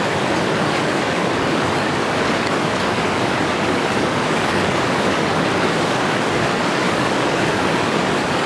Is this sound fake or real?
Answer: fake